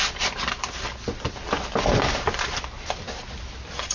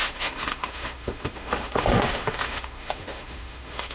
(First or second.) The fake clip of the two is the second